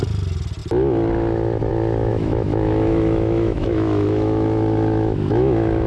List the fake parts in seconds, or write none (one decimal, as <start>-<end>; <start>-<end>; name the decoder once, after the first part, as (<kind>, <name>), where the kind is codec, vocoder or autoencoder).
2.1-5.9 (autoencoder, DAC-VAE)